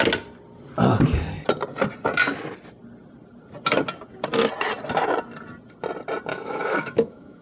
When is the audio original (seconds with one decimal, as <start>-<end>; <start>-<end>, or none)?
0.0-6.3